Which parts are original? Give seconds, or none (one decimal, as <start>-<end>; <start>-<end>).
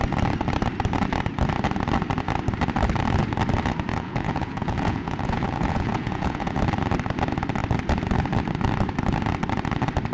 0.0-3.9; 6.6-10.1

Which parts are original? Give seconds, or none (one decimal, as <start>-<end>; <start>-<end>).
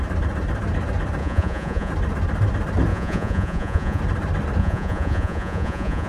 0.0-1.2; 1.9-2.9; 4.0-4.6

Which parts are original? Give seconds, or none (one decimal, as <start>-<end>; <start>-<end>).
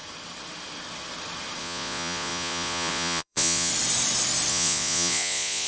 0.0-1.6; 3.7-4.5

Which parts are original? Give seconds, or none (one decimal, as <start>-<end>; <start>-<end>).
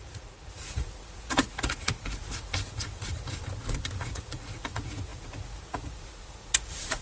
3.4-4.0